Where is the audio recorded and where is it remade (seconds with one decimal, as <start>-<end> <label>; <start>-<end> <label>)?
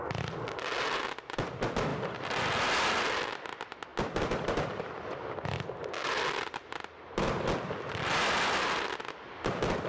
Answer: 0.0-9.9 recorded